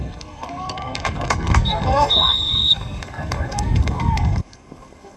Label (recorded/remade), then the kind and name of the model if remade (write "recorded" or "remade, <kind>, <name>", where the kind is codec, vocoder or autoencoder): remade, codec, SNAC